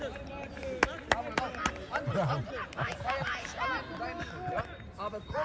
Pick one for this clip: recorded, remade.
recorded